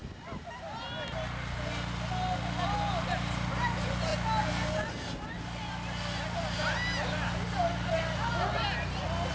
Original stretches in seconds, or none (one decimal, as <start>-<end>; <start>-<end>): 0.0-9.3